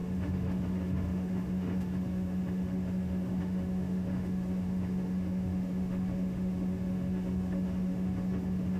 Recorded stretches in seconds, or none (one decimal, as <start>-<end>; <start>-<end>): none